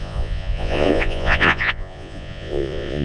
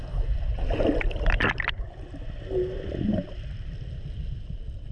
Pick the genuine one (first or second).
second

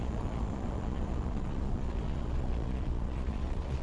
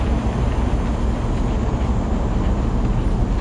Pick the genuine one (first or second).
second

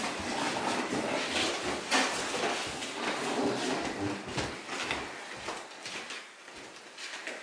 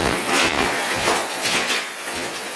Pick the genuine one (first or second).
first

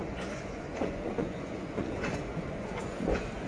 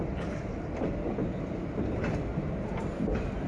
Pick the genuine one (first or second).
second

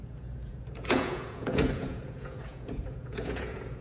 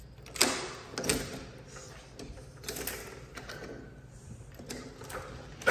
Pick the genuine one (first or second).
second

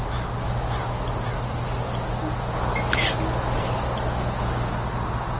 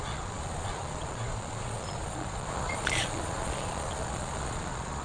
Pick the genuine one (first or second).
first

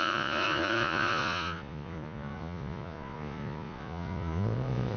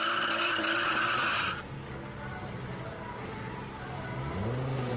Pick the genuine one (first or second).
second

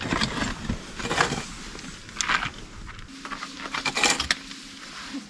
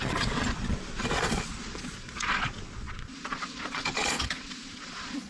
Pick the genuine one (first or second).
first